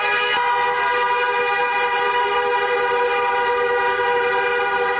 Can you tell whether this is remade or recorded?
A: recorded